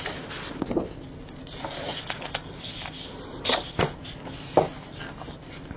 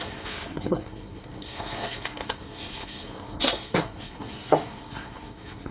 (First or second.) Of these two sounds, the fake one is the second